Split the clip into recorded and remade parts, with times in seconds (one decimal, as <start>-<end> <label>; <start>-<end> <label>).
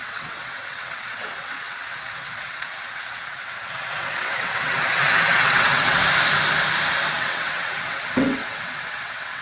0.0-6.0 remade; 6.0-7.1 recorded; 7.1-9.4 remade